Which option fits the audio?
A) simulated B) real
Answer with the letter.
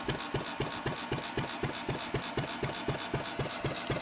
B